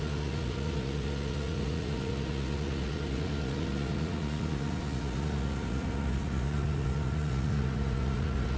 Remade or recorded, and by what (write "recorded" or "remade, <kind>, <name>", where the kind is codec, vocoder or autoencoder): remade, vocoder, Vocos